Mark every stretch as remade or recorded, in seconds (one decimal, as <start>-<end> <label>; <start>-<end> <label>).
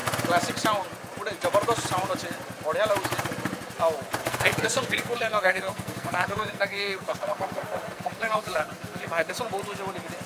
0.0-4.2 recorded; 4.2-9.3 remade; 9.3-10.3 recorded